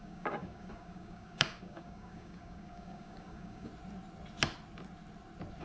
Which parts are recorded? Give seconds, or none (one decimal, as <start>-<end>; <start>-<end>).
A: 3.7-5.6